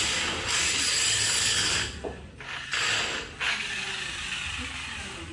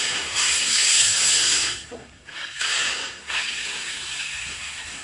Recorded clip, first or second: first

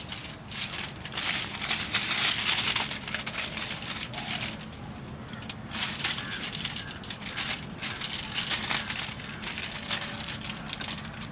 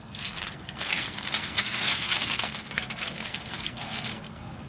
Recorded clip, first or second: first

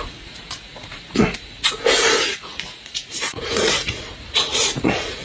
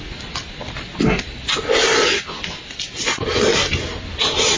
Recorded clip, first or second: second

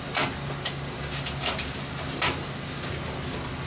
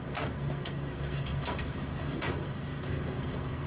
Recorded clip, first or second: first